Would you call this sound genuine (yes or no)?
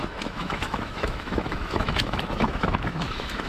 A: no